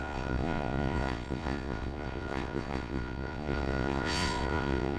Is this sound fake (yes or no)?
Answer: yes